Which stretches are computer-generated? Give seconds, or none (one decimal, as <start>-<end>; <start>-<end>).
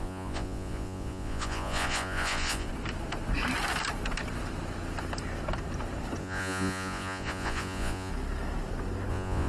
0.0-2.7; 6.2-8.1; 9.1-9.5